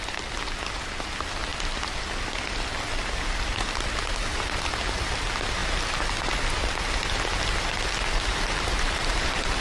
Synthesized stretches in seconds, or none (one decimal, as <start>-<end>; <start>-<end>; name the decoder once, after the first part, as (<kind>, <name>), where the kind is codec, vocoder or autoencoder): none